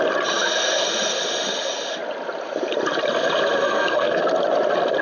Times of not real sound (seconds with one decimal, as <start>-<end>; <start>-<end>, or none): 3.6-4.2

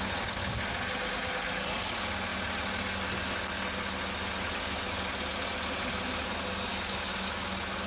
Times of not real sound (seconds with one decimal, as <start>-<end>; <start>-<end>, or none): 6.7-7.5